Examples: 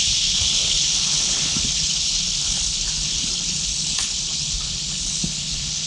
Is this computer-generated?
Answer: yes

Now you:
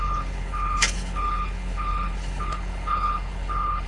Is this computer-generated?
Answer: yes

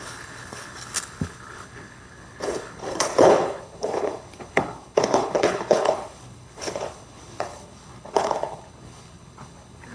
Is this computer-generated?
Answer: yes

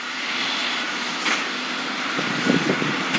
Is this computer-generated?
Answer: no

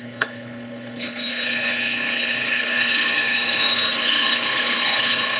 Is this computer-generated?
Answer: yes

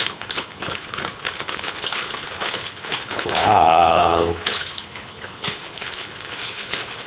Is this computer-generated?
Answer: yes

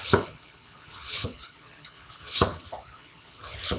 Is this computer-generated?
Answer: yes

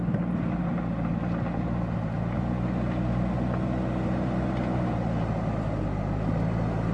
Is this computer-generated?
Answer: no